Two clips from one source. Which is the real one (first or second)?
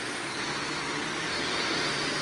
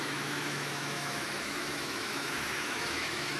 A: first